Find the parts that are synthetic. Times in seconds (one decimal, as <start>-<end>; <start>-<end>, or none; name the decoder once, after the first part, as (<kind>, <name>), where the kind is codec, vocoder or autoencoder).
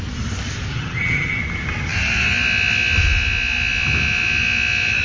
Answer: 0.7-1.4 (vocoder, HiFi-GAN)